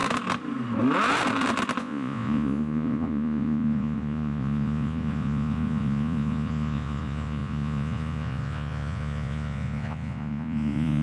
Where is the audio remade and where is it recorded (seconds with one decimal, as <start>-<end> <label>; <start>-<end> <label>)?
0.0-1.8 recorded; 1.8-11.0 remade